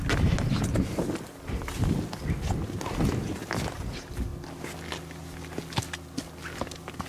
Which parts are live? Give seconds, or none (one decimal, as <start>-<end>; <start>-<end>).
0.0-7.1